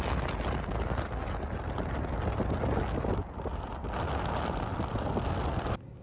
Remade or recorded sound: recorded